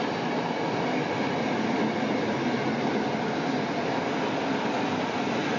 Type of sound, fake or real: real